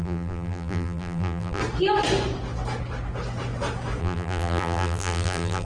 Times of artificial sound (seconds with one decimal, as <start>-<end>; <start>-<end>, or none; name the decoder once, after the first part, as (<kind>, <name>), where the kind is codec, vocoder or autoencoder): 0.0-1.6 (vocoder, BigVGAN v2); 4.0-5.6